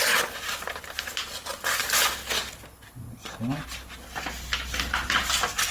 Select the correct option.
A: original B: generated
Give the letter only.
A